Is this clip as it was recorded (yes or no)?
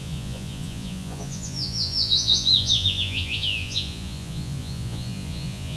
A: no